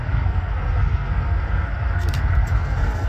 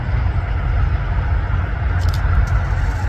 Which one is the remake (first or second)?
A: first